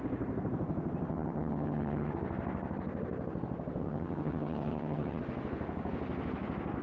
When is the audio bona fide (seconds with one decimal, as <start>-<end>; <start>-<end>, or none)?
0.0-1.1; 2.1-3.8; 5.2-6.8